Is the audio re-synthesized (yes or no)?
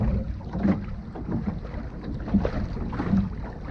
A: no